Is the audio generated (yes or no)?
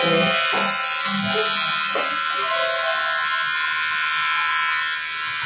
no